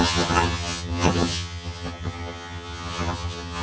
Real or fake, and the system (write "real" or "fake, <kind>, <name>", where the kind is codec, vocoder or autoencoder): fake, vocoder, HiFi-GAN